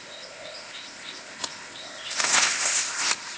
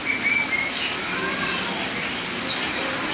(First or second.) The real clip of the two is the second